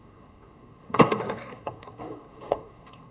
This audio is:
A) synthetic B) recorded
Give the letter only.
A